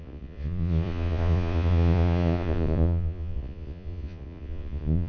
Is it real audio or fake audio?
fake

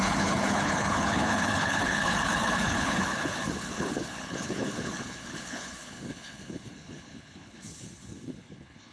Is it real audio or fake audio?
fake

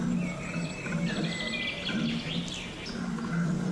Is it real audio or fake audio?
real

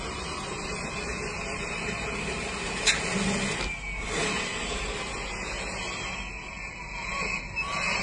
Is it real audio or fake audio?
real